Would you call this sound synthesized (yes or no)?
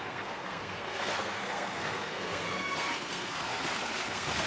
yes